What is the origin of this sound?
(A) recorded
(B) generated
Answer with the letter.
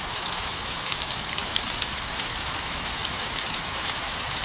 B